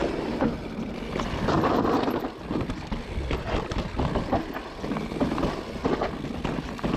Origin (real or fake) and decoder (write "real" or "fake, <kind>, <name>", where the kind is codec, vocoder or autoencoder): real